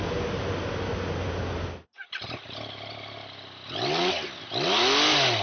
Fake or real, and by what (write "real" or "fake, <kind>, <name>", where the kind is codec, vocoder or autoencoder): real